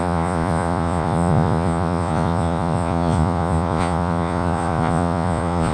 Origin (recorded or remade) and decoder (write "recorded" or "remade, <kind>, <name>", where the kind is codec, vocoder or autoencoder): remade, vocoder, Vocos